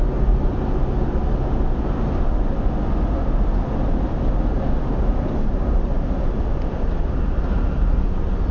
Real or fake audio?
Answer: real